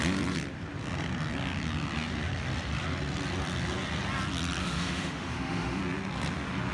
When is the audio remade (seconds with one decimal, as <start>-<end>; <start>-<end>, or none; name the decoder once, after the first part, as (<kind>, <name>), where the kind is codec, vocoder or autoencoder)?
4.6-5.8 (autoencoder, DAC-VAE)